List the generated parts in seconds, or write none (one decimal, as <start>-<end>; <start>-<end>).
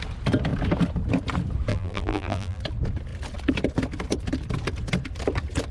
1.7-2.6